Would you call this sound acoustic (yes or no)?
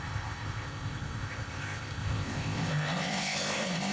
no